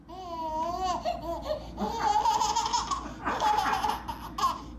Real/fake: real